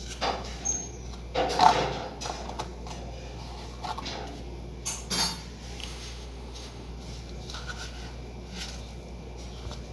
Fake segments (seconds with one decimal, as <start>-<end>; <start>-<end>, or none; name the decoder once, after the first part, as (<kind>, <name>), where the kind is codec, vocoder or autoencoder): 5.8-6.9 (autoencoder, DAC-VAE)